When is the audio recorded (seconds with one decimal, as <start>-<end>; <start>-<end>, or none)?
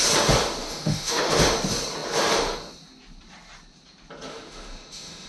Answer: 0.0-0.6; 1.4-4.3